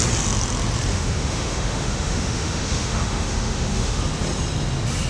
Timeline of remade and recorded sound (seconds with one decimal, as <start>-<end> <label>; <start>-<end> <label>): 0.0-0.9 recorded; 0.9-4.0 remade; 4.0-5.1 recorded